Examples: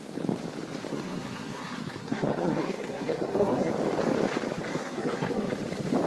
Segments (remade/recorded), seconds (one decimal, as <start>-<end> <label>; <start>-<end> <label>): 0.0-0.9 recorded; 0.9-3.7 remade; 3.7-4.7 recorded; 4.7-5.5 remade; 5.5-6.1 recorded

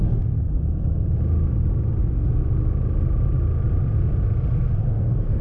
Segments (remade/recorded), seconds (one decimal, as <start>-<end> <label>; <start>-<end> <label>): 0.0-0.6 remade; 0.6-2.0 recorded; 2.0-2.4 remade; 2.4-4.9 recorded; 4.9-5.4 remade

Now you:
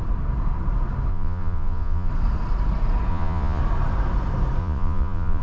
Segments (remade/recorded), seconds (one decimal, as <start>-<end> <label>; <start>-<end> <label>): 0.0-1.1 recorded; 1.1-2.1 remade; 2.1-3.1 recorded; 3.1-3.6 remade; 3.6-4.6 recorded; 4.6-5.4 remade

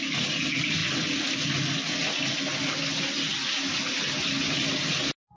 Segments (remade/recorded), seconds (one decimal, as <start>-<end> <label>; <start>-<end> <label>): 0.0-5.4 recorded